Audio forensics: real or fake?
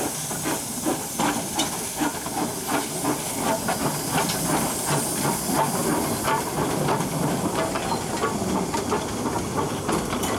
real